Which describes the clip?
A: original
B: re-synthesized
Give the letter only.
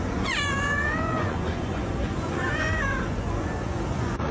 B